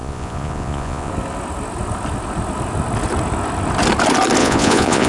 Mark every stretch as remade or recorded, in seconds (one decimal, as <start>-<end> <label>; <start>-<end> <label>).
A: 0.0-1.1 remade; 1.1-4.4 recorded; 4.4-5.1 remade